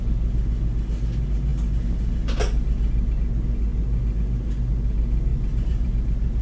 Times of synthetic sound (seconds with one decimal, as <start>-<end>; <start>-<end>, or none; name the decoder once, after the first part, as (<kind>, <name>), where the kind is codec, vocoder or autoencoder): 5.3-6.4 (vocoder, BigVGAN v2)